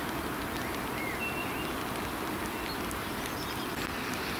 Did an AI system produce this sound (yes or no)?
no